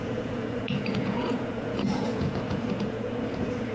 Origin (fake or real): fake